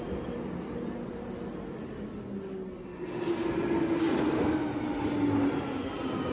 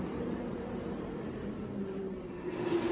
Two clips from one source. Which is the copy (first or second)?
second